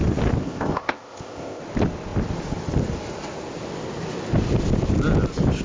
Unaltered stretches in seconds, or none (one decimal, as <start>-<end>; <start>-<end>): 0.0-0.4; 1.6-5.6